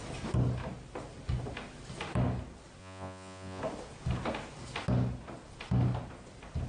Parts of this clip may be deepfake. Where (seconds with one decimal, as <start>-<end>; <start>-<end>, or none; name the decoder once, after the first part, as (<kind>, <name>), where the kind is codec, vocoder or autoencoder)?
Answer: 2.8-3.6 (vocoder, Vocos)